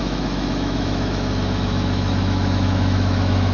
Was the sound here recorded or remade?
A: remade